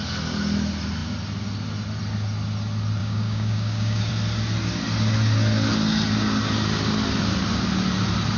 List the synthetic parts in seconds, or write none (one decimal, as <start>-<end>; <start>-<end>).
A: 3.0-4.1

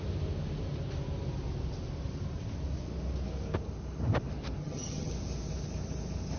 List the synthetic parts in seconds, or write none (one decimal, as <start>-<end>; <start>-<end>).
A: 4.6-5.1